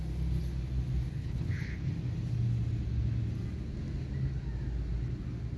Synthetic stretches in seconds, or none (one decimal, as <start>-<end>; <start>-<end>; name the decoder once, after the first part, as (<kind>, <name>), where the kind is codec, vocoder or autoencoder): 1.2-1.9 (codec, HILCodec)